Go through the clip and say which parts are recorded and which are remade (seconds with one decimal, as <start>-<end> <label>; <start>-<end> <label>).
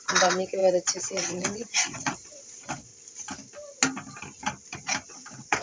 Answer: 0.0-2.9 remade; 2.9-5.1 recorded; 5.1-5.6 remade